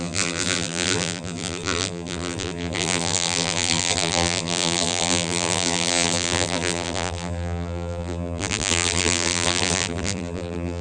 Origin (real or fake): fake